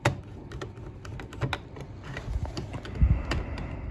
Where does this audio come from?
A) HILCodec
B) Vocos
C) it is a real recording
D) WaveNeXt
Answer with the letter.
C